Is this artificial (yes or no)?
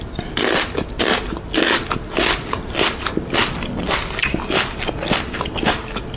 no